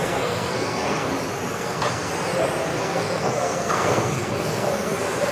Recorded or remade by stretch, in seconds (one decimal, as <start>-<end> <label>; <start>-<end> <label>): 0.0-1.1 remade; 1.1-1.5 recorded; 1.5-2.1 remade; 2.1-2.7 recorded; 2.7-5.3 remade